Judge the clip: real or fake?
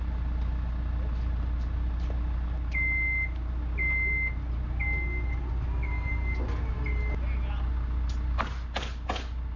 real